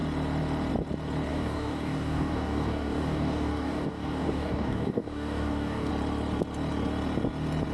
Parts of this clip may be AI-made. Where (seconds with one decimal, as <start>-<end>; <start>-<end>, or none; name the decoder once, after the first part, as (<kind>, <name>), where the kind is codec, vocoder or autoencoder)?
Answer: 1.3-5.9 (codec, DAC)